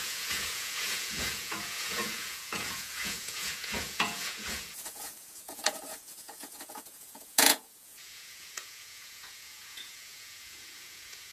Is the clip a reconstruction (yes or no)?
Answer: yes